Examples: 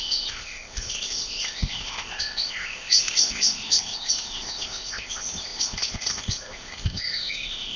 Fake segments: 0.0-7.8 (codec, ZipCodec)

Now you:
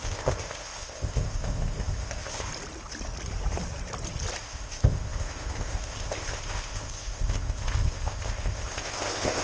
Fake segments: 0.0-2.5 (codec, ZipCodec); 4.4-9.4